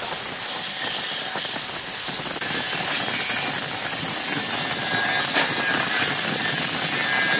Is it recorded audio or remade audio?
recorded